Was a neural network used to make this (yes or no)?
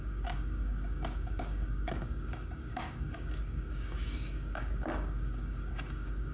yes